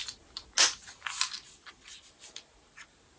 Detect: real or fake real